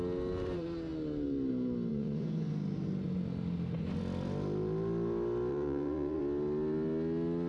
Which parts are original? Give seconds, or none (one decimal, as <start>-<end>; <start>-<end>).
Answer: 0.0-1.9; 2.5-5.5; 6.2-7.5